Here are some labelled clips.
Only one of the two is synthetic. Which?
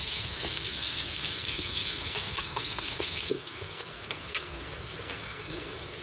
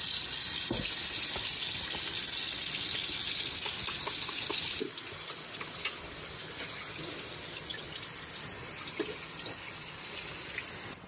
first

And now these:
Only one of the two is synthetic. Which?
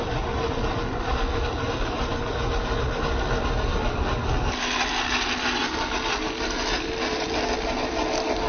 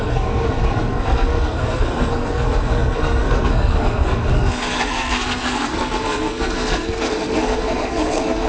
second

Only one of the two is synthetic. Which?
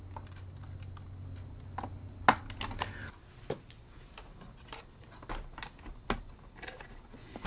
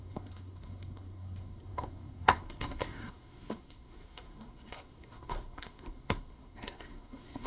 second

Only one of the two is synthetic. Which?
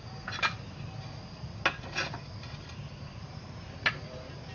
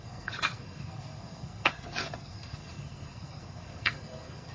second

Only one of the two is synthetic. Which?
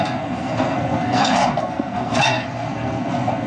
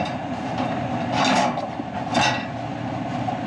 first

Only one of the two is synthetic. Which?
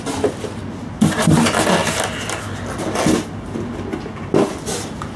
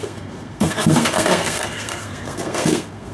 second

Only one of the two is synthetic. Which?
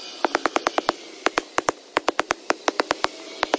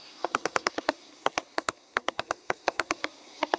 second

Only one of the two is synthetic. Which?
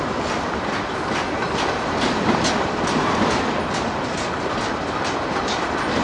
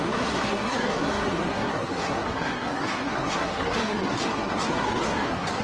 second